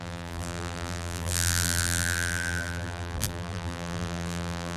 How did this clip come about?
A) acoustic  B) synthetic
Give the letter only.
B